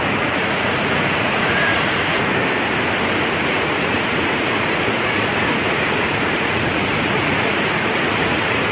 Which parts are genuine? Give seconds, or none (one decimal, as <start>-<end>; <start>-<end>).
2.3-3.1

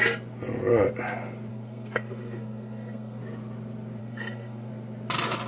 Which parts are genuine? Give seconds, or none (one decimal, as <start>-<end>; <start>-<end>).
0.0-1.5; 3.2-4.0; 4.7-5.5